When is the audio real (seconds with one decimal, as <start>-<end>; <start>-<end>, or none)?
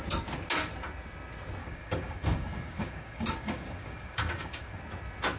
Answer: 0.0-1.6; 4.8-5.4